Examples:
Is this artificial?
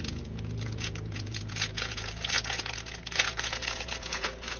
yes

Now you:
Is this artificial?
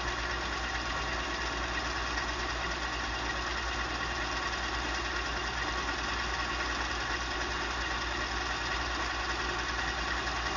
no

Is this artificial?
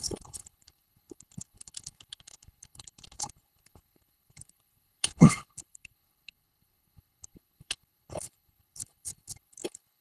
yes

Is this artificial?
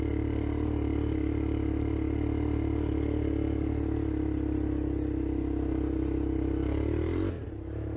no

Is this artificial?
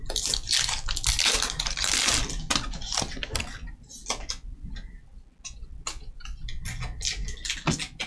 no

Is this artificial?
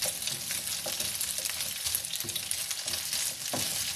no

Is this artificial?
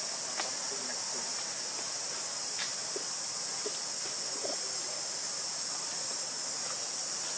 no